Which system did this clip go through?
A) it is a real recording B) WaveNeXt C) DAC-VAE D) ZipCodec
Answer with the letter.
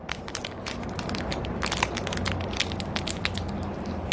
A